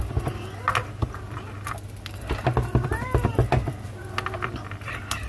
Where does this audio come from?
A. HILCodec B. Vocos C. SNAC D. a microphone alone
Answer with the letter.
D